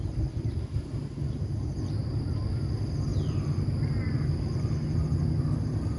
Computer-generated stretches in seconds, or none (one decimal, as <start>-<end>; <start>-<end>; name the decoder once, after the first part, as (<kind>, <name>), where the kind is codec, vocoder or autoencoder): 3.1-4.7 (vocoder, BigVGAN v2)